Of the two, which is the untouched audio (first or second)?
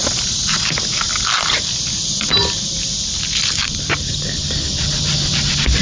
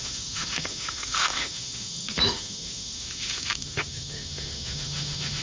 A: first